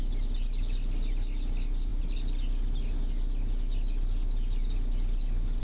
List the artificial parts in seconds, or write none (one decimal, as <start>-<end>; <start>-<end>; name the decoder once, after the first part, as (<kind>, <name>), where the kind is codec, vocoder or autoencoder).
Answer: none